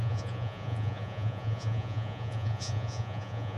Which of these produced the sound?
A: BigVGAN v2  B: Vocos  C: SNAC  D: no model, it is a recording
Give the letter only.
B